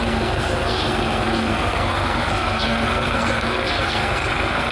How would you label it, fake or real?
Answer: fake